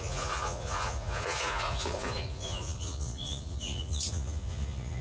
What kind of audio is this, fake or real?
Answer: fake